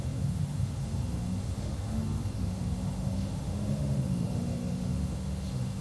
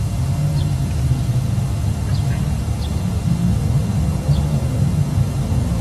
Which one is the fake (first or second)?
first